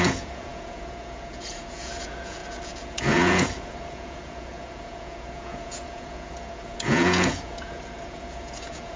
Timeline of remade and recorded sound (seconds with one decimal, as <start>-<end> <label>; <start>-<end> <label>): 0.0-9.0 remade